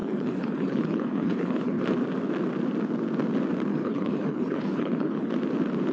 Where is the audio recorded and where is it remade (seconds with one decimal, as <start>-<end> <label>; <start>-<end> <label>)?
0.0-1.8 remade; 1.8-3.7 recorded; 3.7-5.3 remade; 5.3-5.9 recorded